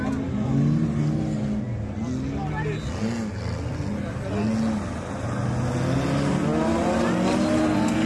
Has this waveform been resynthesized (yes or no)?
no